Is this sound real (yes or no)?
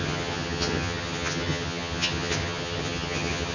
no